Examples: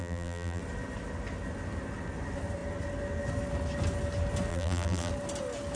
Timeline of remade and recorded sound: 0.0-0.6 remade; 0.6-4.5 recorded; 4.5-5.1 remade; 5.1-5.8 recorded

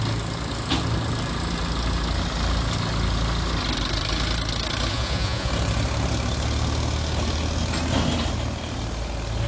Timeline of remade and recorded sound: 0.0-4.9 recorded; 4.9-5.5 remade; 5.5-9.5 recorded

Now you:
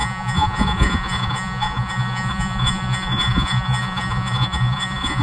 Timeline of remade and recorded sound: 0.0-5.2 remade

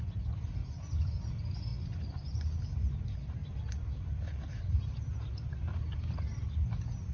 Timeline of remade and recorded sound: 0.0-0.6 recorded; 0.6-1.2 remade; 1.2-1.7 recorded; 1.7-2.3 remade; 2.3-7.1 recorded

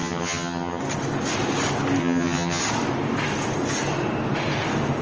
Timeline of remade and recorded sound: 0.0-0.8 remade; 0.8-2.0 recorded; 2.0-2.6 remade; 2.6-5.0 recorded

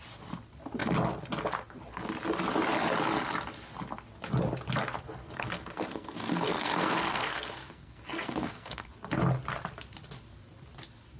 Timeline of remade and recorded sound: 0.0-5.2 recorded; 5.2-8.9 remade; 8.9-11.2 recorded

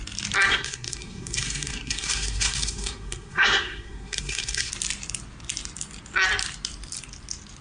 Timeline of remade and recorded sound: 0.0-0.5 recorded; 0.5-4.7 remade; 4.7-7.6 recorded

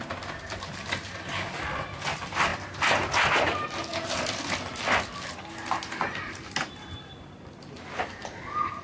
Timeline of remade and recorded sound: 0.0-8.8 recorded